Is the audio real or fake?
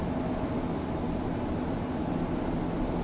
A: real